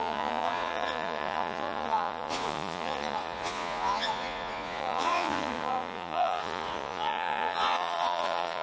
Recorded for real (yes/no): no